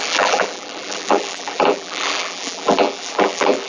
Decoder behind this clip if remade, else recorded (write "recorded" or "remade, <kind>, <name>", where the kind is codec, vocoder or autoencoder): remade, vocoder, BigVGAN v2